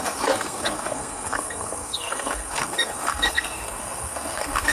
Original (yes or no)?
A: no